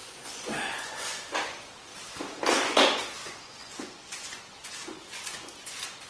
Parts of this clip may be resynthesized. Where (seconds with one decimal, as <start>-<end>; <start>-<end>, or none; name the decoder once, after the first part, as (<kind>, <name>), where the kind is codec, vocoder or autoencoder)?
0.0-1.9 (vocoder, Vocos); 2.5-6.1